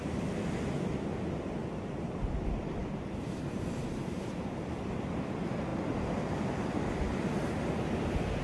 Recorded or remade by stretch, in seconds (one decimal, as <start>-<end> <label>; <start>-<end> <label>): 0.0-1.6 recorded; 1.6-2.2 remade; 2.2-2.8 recorded; 2.8-4.6 remade; 4.6-8.4 recorded